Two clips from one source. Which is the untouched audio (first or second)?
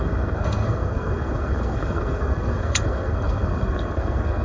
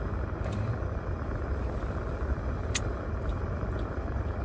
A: second